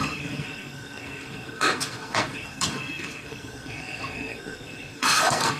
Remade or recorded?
remade